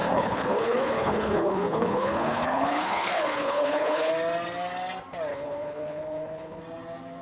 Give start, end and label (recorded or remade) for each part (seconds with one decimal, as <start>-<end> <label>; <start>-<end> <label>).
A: 0.0-4.1 remade; 4.1-5.3 recorded; 5.3-6.6 remade; 6.6-7.2 recorded